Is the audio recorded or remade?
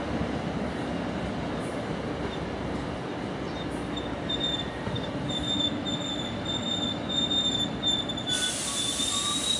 recorded